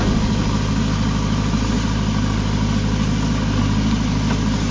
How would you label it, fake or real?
real